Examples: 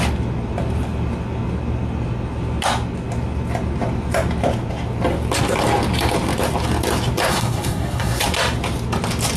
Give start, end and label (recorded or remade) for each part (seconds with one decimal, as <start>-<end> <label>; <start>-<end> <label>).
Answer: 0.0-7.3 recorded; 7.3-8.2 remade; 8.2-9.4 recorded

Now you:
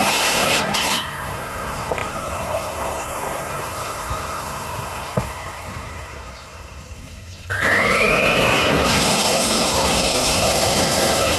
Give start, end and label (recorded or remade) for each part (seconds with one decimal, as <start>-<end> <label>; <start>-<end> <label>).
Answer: 0.0-11.4 remade

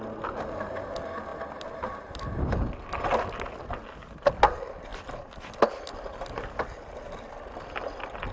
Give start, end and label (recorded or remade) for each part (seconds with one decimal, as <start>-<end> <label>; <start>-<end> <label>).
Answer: 0.0-8.3 recorded